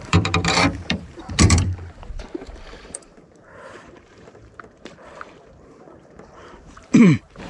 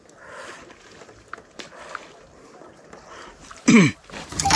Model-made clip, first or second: first